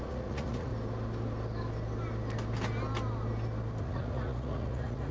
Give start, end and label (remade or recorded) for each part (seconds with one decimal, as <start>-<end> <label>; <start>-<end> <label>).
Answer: 0.0-0.7 remade; 0.7-3.8 recorded; 3.8-5.1 remade